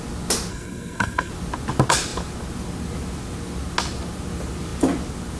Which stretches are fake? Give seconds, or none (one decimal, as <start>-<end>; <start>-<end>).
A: 0.5-1.3